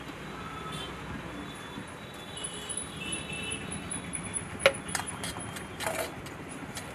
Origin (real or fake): real